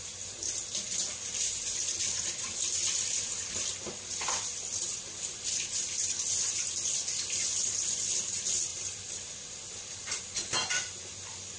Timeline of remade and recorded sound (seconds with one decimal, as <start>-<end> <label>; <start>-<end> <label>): 0.0-11.6 recorded